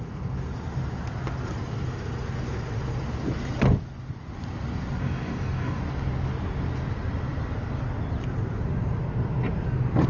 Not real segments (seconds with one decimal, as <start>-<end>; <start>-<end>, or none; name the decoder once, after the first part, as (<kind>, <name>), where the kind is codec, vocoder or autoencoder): 5.0-5.8 (codec, DAC)